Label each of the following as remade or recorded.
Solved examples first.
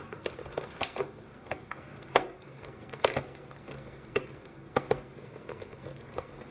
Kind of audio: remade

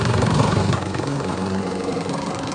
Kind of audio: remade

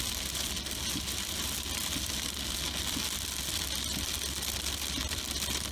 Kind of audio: recorded